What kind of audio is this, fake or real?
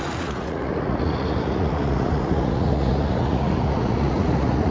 fake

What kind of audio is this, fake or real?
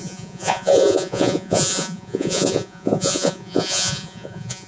fake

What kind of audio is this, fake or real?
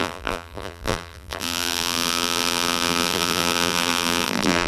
fake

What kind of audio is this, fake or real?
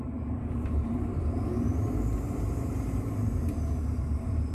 fake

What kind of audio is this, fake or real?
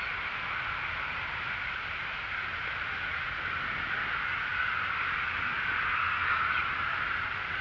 real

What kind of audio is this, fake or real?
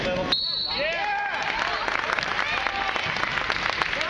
real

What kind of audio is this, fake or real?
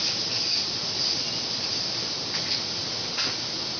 real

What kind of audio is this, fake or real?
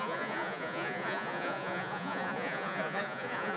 fake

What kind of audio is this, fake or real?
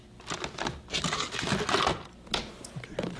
real